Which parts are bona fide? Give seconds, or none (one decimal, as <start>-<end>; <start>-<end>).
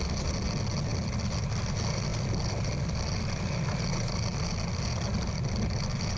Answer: 0.0-6.2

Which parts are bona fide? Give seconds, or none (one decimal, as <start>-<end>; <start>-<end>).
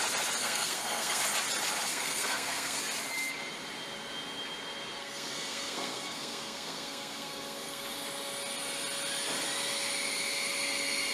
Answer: 0.0-0.4; 1.2-1.9; 2.8-5.0; 7.8-11.1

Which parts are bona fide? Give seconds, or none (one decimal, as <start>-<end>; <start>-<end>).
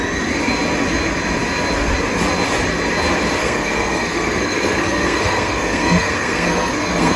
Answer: 0.0-3.4